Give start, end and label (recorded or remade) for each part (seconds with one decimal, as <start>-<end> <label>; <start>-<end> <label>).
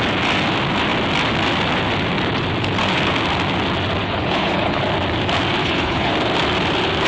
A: 0.0-4.0 recorded; 4.0-4.8 remade; 4.8-5.6 recorded; 5.6-6.1 remade; 6.1-7.1 recorded